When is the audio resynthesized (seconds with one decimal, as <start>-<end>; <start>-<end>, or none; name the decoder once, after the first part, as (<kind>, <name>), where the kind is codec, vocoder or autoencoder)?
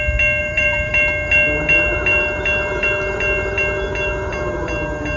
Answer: 0.4-0.9 (vocoder, BigVGAN v2)